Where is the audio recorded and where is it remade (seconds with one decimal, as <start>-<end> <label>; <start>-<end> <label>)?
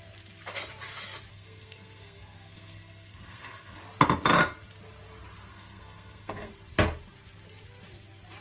0.0-1.3 recorded; 1.3-3.8 remade; 3.8-5.5 recorded; 5.5-6.5 remade; 6.5-8.4 recorded